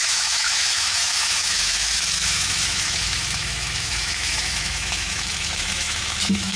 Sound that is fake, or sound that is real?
fake